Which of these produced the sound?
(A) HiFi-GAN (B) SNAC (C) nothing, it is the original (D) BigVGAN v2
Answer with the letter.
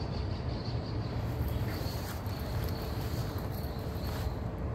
D